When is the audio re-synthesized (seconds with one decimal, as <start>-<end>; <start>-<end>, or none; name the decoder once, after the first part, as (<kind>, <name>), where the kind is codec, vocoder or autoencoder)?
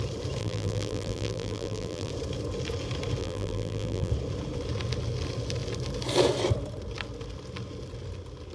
0.4-2.1 (vocoder, BigVGAN v2); 3.2-4.1